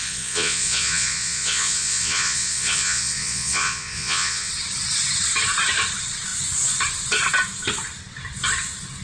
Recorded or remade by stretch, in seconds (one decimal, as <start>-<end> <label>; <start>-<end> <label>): 0.0-4.5 remade; 4.5-9.0 recorded